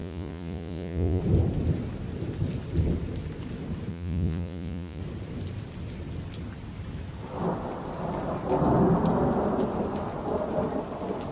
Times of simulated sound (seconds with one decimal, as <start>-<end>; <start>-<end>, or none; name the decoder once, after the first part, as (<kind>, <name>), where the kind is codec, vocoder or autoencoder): 0.0-1.2 (vocoder, Vocos); 3.9-5.0